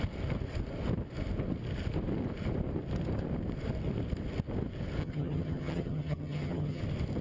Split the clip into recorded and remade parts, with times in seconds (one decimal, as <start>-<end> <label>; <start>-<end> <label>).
0.0-5.0 recorded; 5.0-6.8 remade; 6.8-7.2 recorded